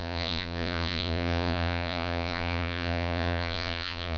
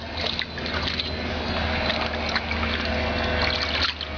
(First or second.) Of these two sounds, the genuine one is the second